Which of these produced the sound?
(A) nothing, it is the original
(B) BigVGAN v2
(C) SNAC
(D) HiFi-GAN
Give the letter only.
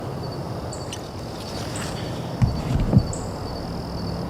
A